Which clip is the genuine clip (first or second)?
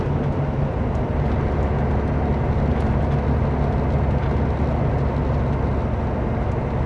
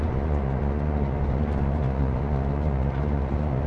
first